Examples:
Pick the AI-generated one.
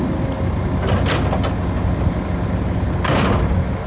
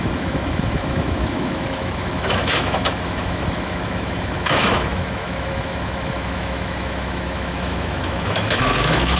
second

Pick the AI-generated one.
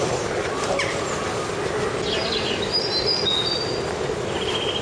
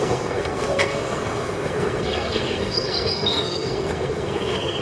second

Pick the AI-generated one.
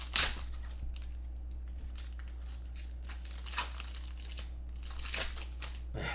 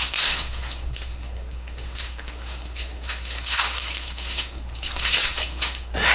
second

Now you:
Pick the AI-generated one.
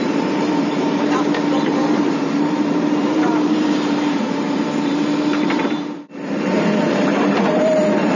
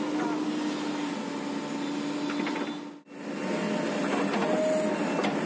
first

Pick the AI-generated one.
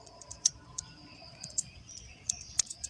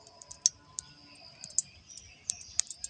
first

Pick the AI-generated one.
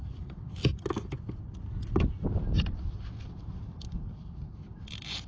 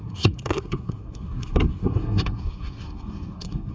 second